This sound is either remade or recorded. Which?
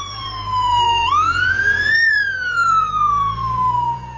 remade